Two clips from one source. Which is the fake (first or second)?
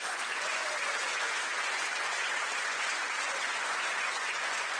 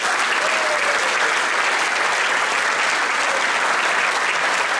first